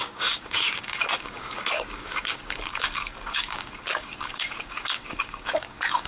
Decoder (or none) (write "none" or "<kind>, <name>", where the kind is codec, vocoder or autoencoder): codec, DAC